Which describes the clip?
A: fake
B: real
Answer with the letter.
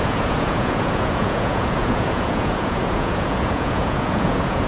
A